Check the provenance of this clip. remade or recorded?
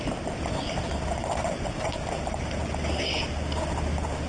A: recorded